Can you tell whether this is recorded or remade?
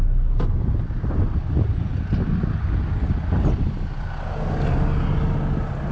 recorded